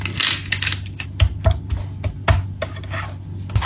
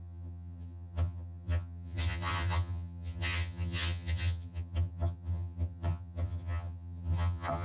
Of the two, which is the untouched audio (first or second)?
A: first